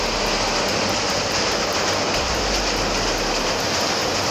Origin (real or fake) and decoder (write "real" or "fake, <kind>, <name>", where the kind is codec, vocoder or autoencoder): real